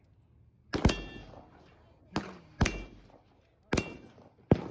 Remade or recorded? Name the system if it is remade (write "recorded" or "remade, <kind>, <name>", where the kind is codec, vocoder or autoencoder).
recorded